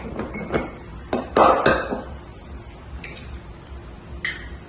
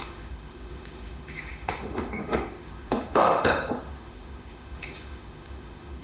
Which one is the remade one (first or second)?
second